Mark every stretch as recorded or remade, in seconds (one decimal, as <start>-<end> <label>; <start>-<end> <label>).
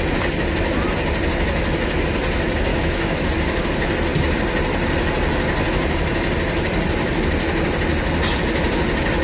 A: 0.0-2.7 recorded; 2.7-3.3 remade; 3.3-9.2 recorded